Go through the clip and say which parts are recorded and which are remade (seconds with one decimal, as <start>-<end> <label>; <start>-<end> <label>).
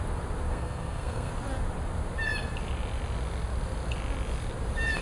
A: 0.0-0.5 recorded; 0.5-1.3 remade; 1.3-5.0 recorded